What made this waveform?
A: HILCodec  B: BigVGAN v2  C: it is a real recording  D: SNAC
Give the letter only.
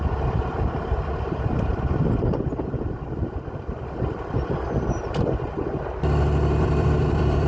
B